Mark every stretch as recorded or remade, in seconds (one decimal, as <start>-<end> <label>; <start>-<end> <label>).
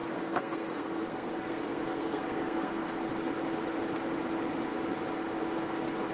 0.0-3.1 remade; 3.1-6.1 recorded